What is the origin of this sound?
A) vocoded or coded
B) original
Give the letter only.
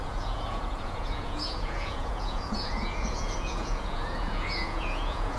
A